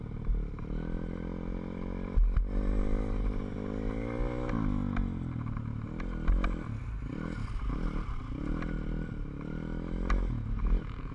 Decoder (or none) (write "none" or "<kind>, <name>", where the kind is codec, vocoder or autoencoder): none